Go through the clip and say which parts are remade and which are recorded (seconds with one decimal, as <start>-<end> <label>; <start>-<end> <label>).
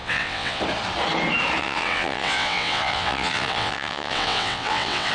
0.0-0.6 remade; 0.6-1.6 recorded; 1.6-5.1 remade